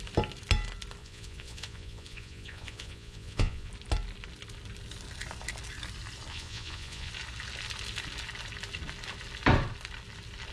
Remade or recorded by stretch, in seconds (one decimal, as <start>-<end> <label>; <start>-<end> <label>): 0.0-1.0 recorded; 1.0-3.7 remade; 3.7-6.3 recorded; 6.3-7.1 remade; 7.1-10.5 recorded